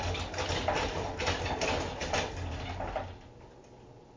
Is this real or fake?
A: real